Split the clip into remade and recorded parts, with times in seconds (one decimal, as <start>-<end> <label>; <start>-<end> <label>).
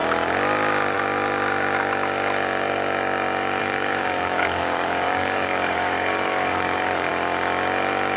0.0-3.6 recorded; 3.6-7.1 remade; 7.1-8.2 recorded